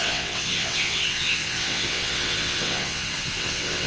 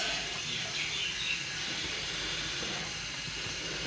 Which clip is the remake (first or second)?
first